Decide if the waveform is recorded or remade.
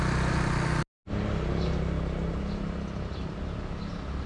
recorded